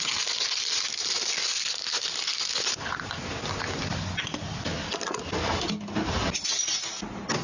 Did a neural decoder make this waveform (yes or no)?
no